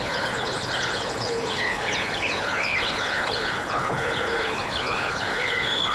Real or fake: fake